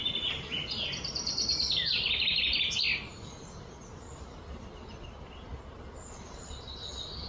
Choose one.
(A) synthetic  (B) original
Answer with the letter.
B